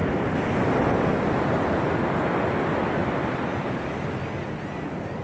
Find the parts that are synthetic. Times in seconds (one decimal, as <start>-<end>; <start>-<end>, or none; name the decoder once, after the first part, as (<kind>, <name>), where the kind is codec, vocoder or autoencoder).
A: none